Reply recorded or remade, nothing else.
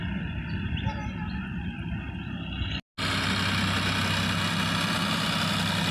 recorded